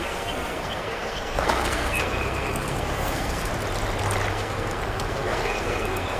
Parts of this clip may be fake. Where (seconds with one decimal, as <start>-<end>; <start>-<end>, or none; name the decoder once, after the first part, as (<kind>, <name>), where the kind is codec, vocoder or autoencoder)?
0.0-3.5 (codec, SNAC); 4.3-6.2